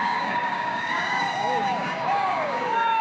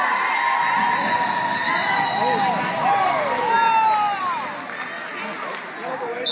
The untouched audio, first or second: second